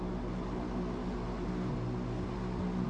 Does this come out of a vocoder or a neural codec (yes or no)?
no